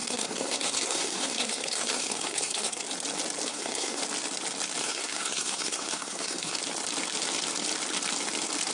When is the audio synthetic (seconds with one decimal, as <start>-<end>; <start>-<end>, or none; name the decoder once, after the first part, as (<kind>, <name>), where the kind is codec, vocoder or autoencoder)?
0.0-2.8 (codec, SNAC); 3.5-4.0; 4.8-6.6